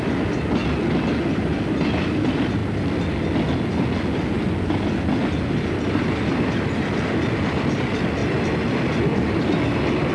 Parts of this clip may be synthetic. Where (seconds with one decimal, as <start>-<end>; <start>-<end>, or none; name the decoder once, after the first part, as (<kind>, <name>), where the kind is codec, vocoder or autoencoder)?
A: 0.0-0.6 (vocoder, BigVGAN v2); 1.4-2.6; 5.3-10.1

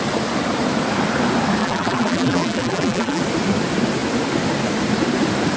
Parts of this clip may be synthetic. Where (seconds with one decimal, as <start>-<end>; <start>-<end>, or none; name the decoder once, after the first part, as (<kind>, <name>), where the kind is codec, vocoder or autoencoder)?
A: 1.6-3.2 (vocoder, BigVGAN v2)

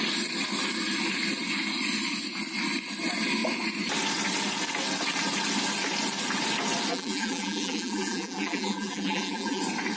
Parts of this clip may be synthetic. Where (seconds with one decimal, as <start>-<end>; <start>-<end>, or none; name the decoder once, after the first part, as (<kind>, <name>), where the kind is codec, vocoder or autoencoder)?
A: 6.9-9.6 (vocoder, BigVGAN v2)

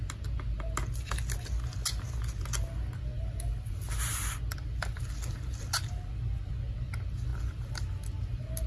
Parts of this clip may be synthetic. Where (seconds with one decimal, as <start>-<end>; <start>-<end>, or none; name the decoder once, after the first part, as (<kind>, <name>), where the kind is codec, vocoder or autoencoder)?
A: 4.5-5.2 (vocoder, BigVGAN v2)